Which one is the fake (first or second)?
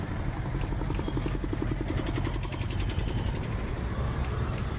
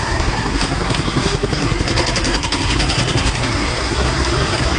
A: second